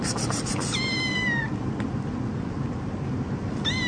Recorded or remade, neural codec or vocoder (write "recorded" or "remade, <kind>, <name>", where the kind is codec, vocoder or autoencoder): recorded